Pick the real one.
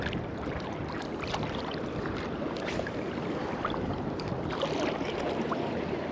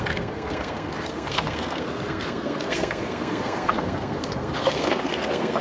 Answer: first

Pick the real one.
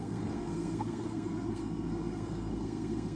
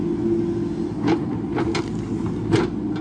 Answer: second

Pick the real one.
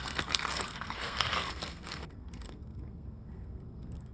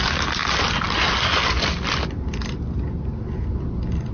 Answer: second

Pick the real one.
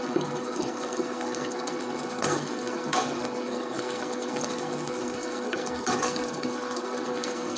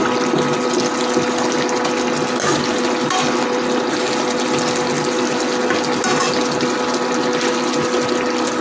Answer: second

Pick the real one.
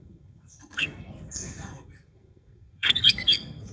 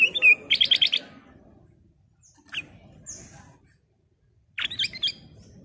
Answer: second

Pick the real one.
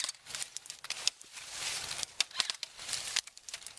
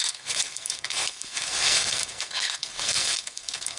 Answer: first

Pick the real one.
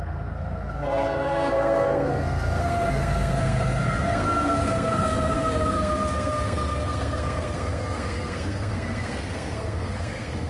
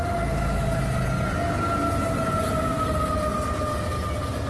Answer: second